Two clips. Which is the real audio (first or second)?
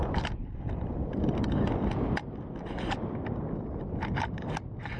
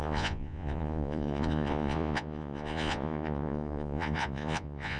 first